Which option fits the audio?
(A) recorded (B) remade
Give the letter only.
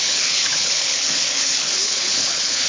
B